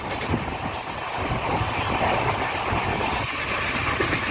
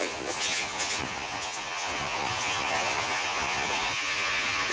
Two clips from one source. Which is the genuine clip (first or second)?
first